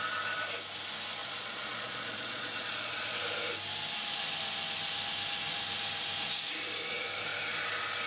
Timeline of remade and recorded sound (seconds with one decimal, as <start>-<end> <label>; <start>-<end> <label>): 0.0-1.2 recorded; 1.2-3.2 remade; 3.2-8.1 recorded